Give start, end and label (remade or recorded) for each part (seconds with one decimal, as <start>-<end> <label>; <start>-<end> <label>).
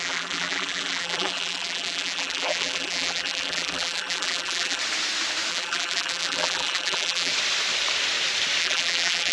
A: 0.0-4.8 remade; 4.8-5.5 recorded; 5.5-7.3 remade; 7.3-8.6 recorded; 8.6-9.3 remade